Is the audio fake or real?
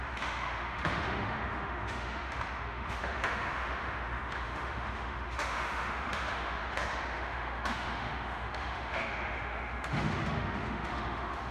fake